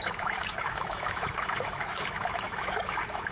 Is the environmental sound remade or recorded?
remade